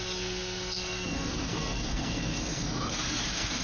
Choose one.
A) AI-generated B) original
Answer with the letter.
A